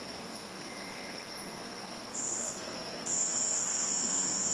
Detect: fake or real fake